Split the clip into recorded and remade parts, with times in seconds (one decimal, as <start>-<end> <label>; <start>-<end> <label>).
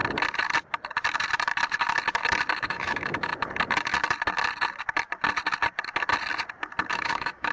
0.0-2.6 recorded; 2.6-3.3 remade; 3.3-6.9 recorded; 6.9-7.5 remade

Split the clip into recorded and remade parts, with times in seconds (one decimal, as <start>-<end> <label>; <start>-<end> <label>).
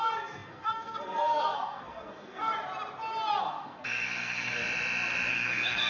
0.0-2.5 remade; 2.5-3.4 recorded; 3.4-4.6 remade; 4.6-5.3 recorded; 5.3-5.9 remade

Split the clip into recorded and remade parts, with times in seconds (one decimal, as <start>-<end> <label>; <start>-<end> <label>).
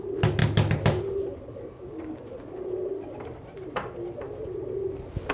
0.0-5.3 recorded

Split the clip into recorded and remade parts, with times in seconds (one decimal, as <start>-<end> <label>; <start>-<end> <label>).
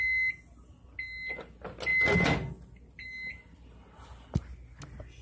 0.0-5.2 recorded